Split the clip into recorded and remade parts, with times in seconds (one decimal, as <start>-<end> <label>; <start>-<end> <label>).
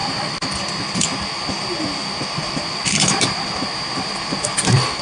0.0-5.0 recorded